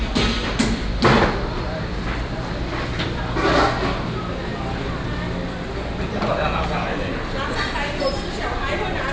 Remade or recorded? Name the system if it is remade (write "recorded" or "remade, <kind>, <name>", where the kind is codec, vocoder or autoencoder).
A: recorded